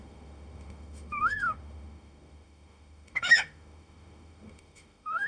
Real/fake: fake